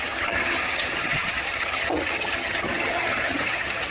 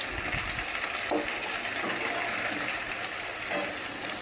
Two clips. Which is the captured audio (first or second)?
second